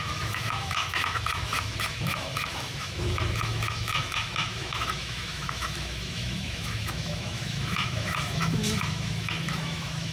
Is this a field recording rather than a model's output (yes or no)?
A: no